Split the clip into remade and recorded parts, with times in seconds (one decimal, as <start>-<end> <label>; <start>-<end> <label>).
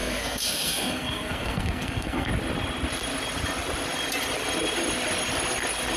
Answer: 0.0-2.3 remade; 2.3-6.0 recorded